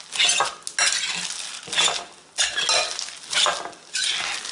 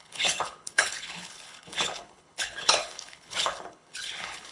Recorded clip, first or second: first